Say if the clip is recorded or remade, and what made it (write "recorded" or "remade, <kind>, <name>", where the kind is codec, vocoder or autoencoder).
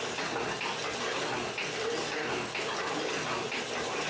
recorded